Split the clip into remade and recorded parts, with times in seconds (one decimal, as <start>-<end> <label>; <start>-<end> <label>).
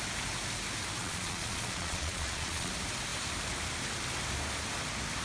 0.0-1.0 recorded; 1.0-2.7 remade; 2.7-5.2 recorded